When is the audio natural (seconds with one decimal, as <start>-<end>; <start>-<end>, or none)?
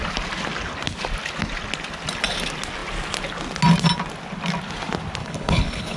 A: 0.0-5.2